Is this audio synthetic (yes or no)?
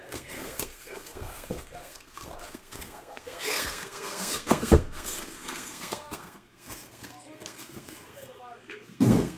yes